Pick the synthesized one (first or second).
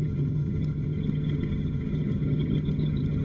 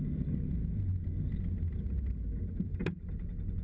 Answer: first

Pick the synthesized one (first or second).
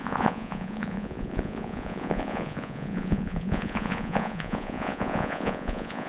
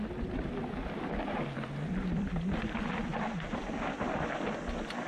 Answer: first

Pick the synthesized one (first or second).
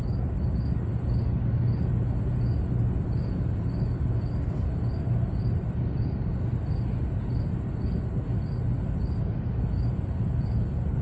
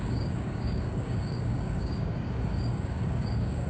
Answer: second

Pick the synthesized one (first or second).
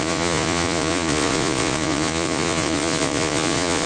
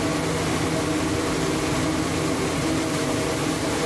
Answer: first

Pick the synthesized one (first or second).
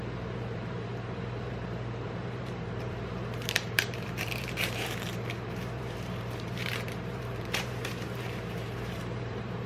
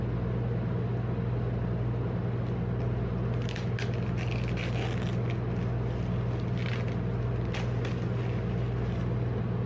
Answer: first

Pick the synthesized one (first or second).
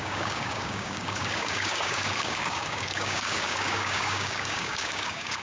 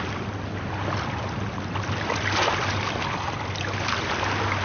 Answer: first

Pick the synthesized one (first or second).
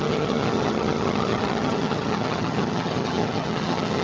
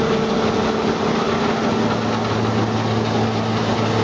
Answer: first